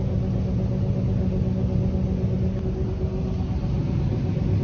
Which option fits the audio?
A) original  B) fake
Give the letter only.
A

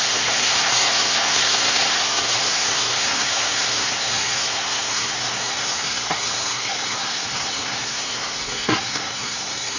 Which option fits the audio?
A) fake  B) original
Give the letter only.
A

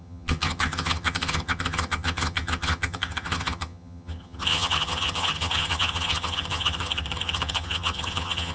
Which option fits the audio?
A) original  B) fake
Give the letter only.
B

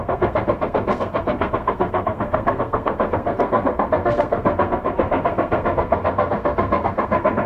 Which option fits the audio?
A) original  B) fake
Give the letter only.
B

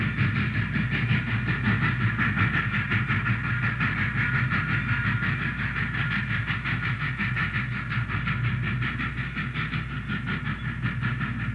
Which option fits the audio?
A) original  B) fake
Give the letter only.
A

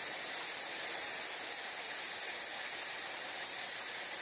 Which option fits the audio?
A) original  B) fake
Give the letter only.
B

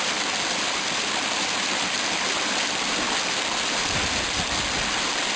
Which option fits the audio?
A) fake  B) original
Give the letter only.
B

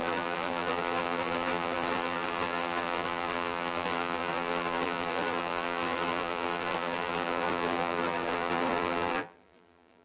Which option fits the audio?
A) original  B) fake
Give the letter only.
B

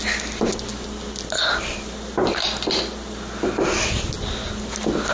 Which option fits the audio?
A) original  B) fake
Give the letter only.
A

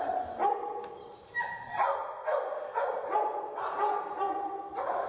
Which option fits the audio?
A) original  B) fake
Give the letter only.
A